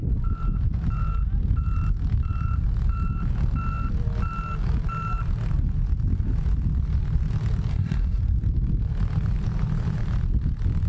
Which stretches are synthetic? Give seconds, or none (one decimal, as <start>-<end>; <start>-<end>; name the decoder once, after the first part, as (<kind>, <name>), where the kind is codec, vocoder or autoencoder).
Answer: 7.7-8.2 (codec, SNAC)